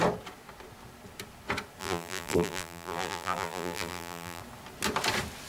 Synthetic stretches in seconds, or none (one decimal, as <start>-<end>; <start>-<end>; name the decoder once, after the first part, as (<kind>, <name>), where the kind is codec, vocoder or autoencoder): 1.8-4.4 (vocoder, BigVGAN v2)